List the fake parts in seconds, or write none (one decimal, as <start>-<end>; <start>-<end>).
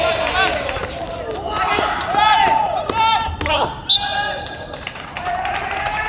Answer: none